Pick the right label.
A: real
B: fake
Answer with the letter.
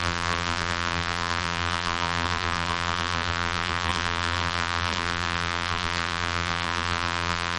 B